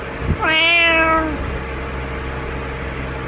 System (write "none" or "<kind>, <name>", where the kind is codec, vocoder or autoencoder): none